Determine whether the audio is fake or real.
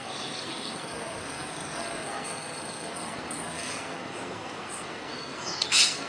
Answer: fake